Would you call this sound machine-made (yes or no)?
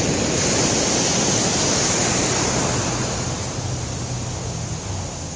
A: no